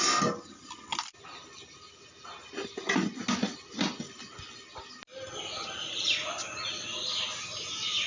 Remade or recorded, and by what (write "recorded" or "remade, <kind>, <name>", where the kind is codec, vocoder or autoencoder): recorded